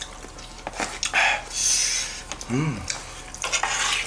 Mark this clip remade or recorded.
recorded